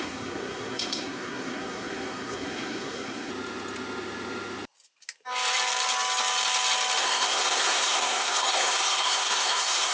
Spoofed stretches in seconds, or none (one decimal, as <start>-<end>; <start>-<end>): 0.0-3.3; 7.0-9.9